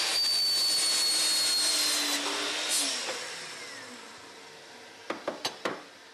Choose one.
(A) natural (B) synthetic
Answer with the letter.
A